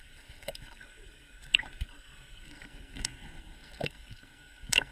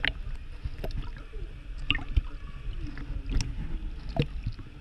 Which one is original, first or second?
second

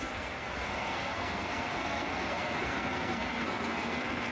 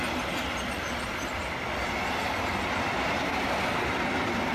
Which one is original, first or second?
second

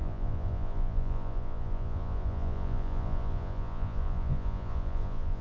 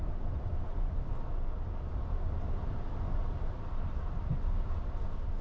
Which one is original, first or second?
second